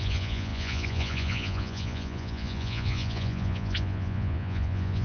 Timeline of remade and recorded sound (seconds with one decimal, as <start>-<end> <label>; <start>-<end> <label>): 0.0-5.0 remade